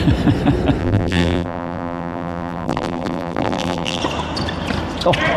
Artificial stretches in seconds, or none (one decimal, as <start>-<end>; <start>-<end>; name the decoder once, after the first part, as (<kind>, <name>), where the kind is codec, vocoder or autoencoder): 0.8-4.0 (vocoder, BigVGAN v2)